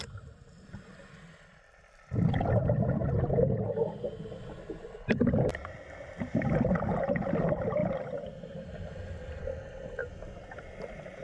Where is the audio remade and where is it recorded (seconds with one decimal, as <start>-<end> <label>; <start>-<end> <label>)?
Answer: 0.0-3.0 remade; 3.0-4.7 recorded; 4.7-5.5 remade; 5.5-6.3 recorded; 6.3-10.0 remade; 10.0-11.2 recorded